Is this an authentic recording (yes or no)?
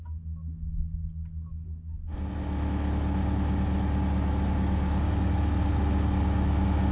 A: yes